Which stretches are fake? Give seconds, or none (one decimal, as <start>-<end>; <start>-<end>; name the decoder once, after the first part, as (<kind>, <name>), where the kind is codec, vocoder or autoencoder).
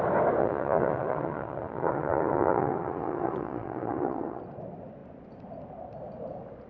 0.4-4.4 (vocoder, Vocos)